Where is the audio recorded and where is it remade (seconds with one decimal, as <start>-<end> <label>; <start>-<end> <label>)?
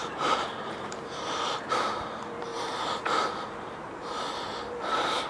0.0-5.3 remade